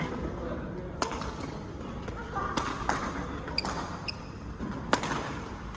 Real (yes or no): yes